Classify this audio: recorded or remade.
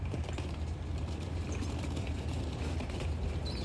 remade